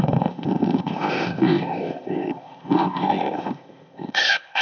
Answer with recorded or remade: remade